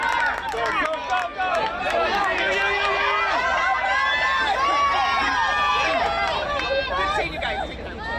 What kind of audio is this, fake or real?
real